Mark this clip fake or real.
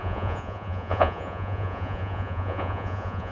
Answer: fake